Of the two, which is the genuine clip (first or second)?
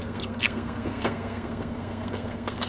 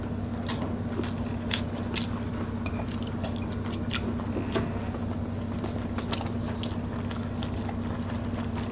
second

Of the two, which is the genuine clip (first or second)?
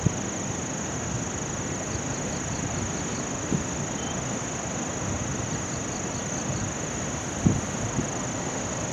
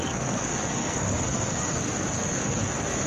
first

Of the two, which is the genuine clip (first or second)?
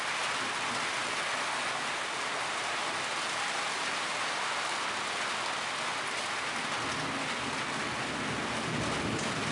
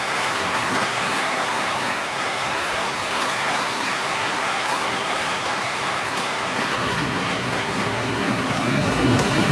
first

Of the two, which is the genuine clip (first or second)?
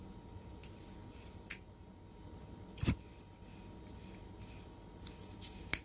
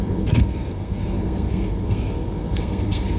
first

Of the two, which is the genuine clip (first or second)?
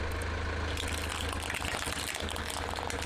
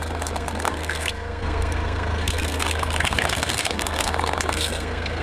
first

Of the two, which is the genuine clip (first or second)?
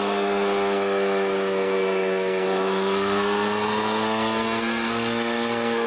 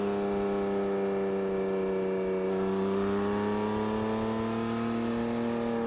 second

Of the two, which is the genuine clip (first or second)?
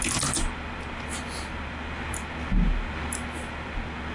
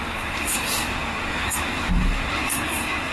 first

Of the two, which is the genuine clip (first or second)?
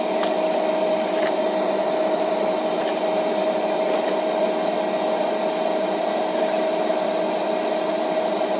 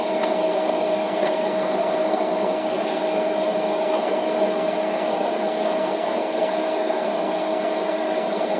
first